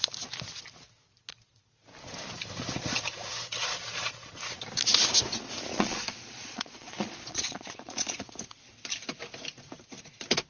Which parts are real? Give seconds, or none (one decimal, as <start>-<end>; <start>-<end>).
0.0-5.7; 8.3-10.5